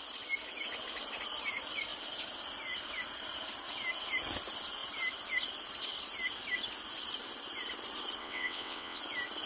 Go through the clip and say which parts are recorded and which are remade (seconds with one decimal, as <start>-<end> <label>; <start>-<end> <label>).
0.0-8.2 recorded; 8.2-9.0 remade; 9.0-9.5 recorded